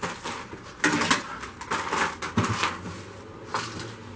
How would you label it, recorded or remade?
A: recorded